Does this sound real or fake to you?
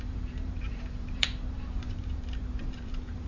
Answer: fake